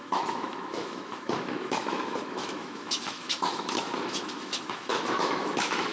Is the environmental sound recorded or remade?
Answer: remade